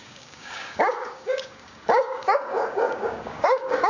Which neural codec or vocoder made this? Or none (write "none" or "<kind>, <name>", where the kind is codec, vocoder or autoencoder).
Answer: codec, DAC